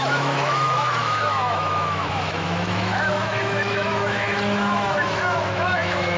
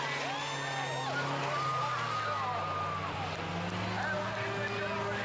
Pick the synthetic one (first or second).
first